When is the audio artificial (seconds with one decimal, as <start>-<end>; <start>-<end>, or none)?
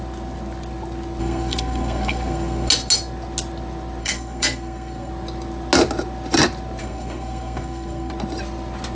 1.2-2.7; 4.0-5.1; 6.8-8.1